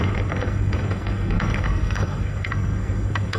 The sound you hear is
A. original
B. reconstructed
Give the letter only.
B